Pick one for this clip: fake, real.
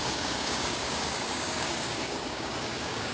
fake